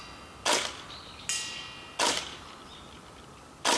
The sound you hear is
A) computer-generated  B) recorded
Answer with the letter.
B